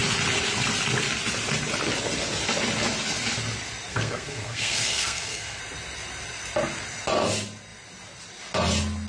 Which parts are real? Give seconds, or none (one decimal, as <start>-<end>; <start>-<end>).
0.0-3.9; 5.6-9.1